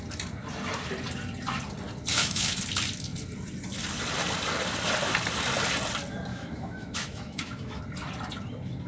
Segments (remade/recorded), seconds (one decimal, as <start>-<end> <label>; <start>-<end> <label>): 0.0-2.1 recorded; 2.1-2.6 remade; 2.6-6.3 recorded; 6.3-7.8 remade; 7.8-8.9 recorded